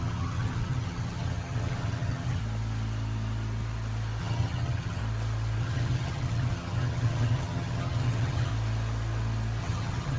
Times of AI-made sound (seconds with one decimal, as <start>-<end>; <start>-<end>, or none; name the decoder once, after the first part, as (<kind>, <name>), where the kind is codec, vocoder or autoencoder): 0.0-2.4 (vocoder, HiFi-GAN); 4.2-5.0; 5.6-8.5; 9.6-10.2